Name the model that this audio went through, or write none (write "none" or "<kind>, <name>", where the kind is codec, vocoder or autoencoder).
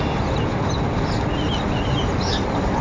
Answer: none